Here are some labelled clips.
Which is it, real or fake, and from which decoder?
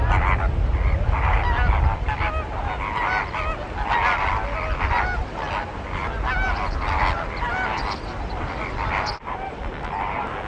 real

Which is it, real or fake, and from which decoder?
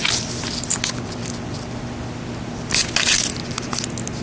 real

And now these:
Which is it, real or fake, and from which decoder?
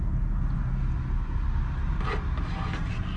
real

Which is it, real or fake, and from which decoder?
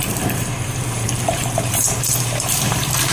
fake, vocoder, BigVGAN v2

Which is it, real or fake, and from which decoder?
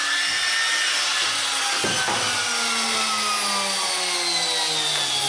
real